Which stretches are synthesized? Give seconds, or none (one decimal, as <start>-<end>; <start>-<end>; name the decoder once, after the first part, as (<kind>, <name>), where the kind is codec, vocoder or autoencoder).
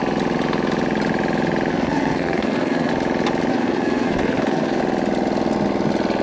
1.7-2.9 (codec, SNAC); 3.5-4.8